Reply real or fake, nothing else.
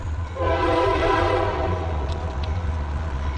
fake